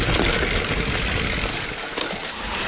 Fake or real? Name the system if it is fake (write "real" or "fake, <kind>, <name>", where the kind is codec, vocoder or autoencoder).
real